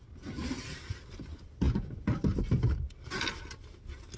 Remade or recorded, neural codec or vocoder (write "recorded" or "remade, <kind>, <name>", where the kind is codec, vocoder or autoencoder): recorded